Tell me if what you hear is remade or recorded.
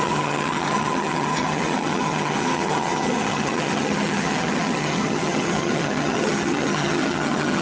remade